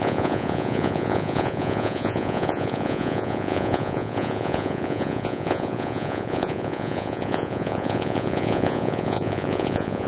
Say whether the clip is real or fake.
fake